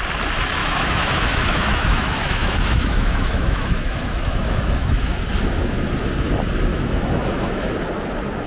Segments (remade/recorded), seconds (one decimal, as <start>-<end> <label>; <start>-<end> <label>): 0.0-0.6 recorded; 0.6-5.2 remade; 5.2-6.7 recorded; 6.7-7.7 remade; 7.7-8.5 recorded